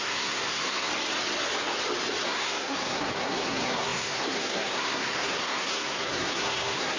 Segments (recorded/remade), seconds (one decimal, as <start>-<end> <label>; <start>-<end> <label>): 0.0-0.9 remade; 0.9-2.2 recorded; 2.2-7.0 remade